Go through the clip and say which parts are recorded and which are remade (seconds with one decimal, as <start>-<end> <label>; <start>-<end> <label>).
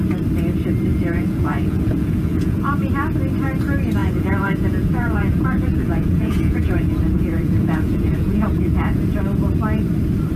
0.0-0.9 recorded; 0.9-2.6 remade; 2.6-4.0 recorded; 4.0-9.2 remade; 9.2-10.4 recorded